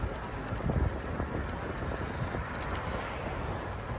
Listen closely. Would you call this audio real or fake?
real